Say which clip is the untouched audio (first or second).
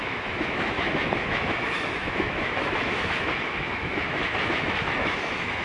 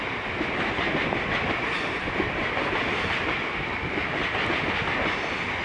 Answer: second